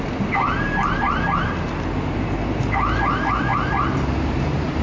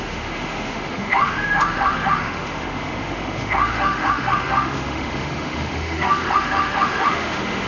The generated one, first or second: second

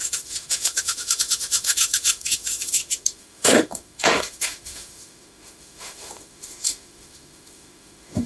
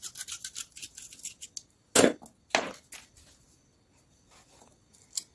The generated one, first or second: first